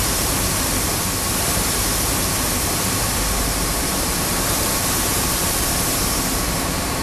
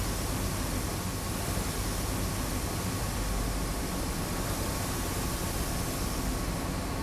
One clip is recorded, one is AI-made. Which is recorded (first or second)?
second